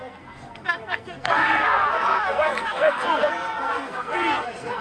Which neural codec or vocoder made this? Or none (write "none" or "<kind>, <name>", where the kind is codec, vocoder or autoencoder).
codec, SNAC